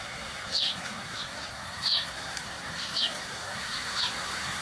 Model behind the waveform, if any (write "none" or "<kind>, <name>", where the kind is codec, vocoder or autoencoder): codec, SNAC